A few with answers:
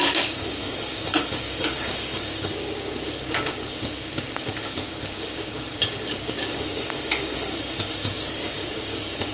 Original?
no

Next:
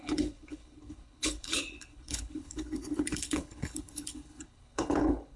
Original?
no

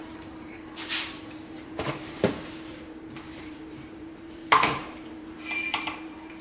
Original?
no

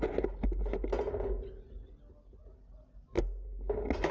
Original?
yes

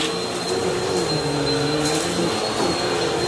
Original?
yes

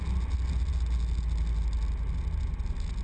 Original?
yes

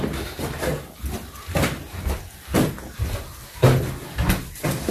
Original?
yes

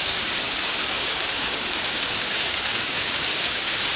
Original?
no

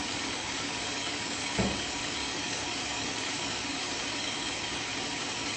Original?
no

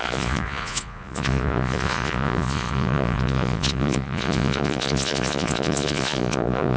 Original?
no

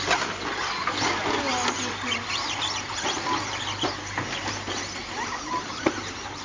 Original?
yes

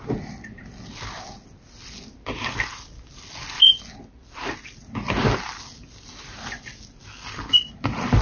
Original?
yes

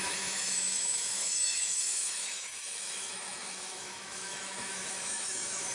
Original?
no